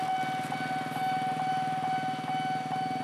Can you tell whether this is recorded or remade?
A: recorded